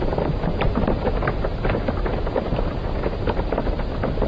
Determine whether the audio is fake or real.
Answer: real